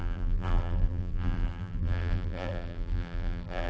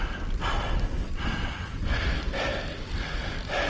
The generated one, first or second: first